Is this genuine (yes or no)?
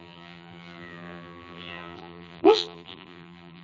no